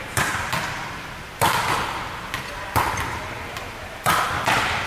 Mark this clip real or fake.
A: fake